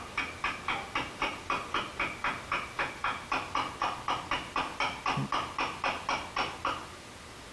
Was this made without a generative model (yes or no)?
yes